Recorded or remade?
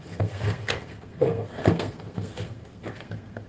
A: remade